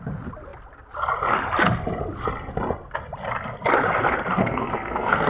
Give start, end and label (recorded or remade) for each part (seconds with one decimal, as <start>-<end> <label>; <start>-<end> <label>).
0.0-4.4 recorded; 4.4-5.3 remade